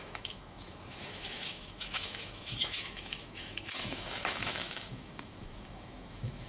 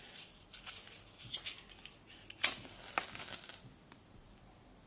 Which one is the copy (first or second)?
first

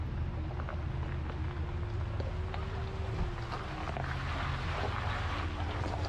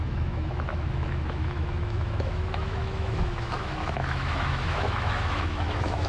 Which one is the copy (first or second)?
second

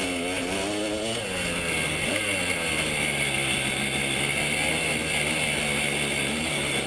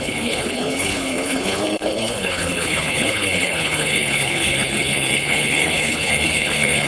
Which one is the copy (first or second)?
second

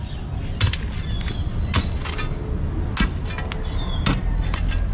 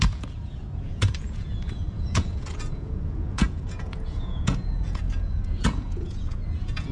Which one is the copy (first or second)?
second